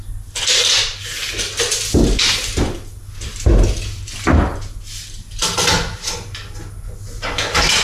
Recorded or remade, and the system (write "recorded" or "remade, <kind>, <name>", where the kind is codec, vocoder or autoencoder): recorded